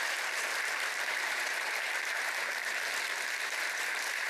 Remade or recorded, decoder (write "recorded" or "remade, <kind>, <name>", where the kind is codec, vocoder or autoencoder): remade, vocoder, BigVGAN v2